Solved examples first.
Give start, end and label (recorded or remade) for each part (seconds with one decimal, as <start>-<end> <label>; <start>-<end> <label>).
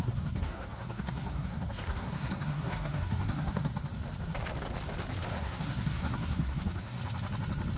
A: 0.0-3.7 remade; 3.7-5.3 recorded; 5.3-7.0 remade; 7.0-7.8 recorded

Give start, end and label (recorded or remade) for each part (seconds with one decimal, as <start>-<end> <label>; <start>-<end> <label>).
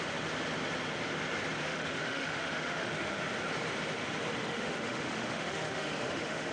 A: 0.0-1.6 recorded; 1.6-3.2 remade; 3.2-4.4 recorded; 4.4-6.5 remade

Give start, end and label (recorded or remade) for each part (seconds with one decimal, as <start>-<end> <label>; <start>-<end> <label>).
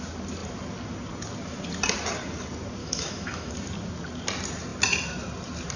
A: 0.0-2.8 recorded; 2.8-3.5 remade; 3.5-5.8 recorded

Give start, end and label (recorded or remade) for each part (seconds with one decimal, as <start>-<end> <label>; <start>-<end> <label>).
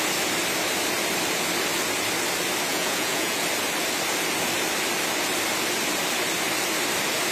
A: 0.0-2.7 recorded; 2.7-3.4 remade; 3.4-7.3 recorded